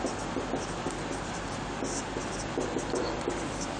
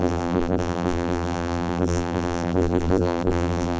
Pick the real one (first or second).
first